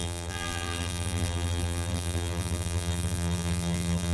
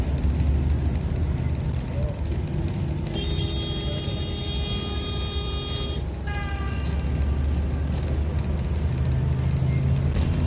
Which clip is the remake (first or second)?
first